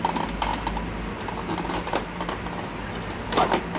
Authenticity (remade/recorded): recorded